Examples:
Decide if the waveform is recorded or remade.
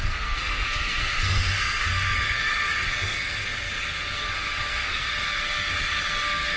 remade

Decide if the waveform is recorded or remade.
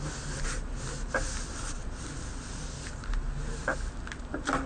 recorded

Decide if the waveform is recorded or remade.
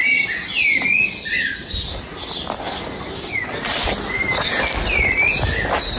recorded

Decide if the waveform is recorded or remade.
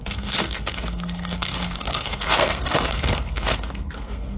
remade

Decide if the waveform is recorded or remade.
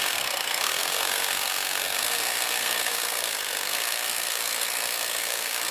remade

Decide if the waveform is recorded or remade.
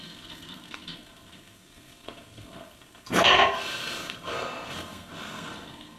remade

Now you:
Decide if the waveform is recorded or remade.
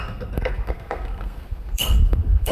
remade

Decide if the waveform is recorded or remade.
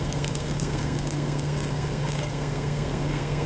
remade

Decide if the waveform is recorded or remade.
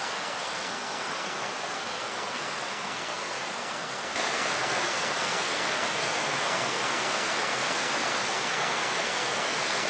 remade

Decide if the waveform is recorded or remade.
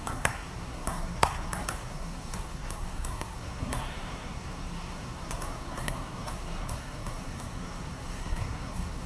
remade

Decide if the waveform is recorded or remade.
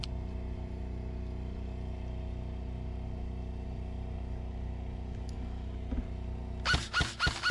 recorded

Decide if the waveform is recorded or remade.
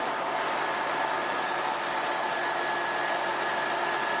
recorded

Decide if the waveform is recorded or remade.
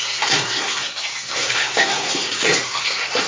remade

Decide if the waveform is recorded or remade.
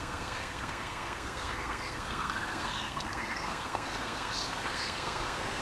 remade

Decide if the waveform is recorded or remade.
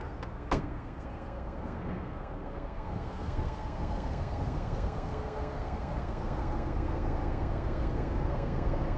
remade